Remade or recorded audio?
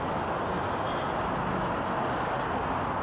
recorded